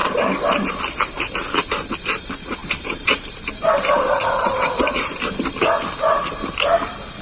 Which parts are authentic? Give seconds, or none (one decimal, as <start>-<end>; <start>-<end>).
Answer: 0.7-2.6; 5.2-7.2